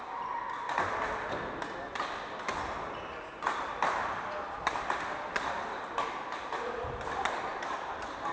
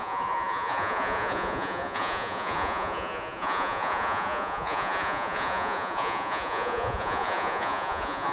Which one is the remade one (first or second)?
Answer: second